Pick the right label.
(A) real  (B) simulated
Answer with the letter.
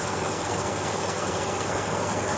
B